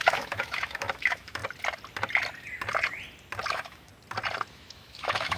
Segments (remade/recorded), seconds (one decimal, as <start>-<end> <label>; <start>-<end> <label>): 0.0-1.4 remade; 1.4-3.5 recorded; 3.5-3.9 remade; 3.9-4.5 recorded; 4.5-5.4 remade